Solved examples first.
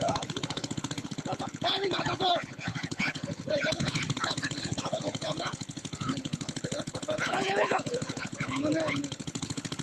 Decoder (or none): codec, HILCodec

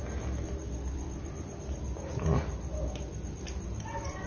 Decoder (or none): none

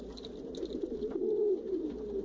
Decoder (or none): none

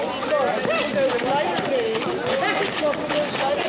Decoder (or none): none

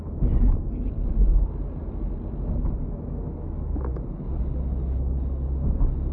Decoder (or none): none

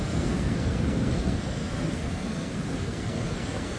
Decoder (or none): codec, SNAC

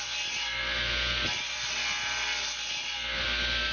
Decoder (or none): none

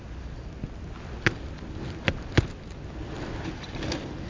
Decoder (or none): none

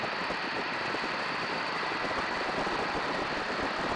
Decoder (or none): none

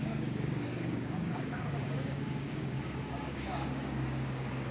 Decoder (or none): codec, DAC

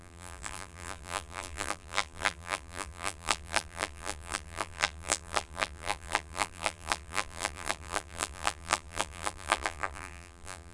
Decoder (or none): vocoder, BigVGAN v2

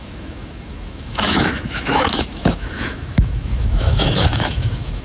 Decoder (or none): autoencoder, DAC-VAE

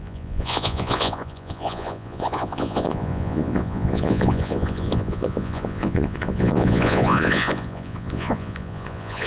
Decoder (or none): vocoder, Vocos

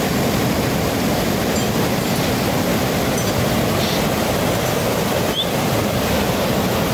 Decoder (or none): none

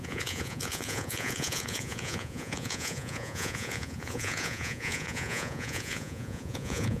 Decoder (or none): vocoder, Vocos